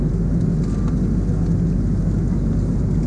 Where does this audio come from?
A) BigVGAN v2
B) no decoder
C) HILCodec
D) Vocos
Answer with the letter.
B